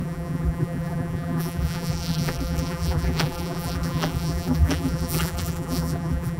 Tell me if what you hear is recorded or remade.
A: remade